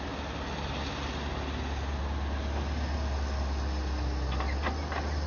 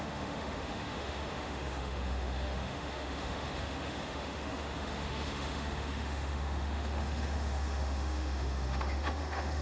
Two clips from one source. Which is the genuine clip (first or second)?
first